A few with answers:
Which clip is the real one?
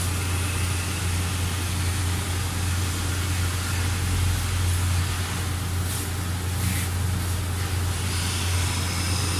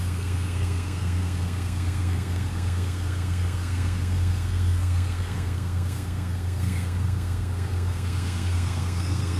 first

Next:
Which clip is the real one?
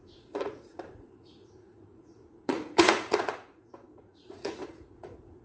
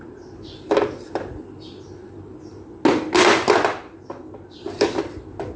second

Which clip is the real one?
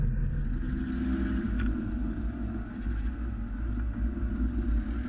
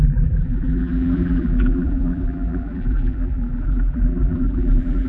first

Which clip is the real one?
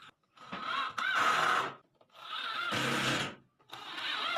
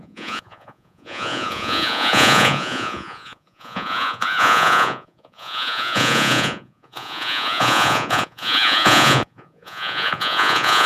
first